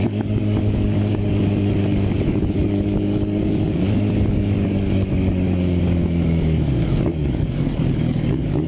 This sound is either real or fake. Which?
fake